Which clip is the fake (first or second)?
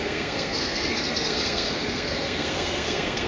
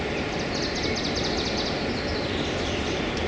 first